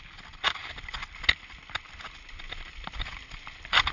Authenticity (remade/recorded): recorded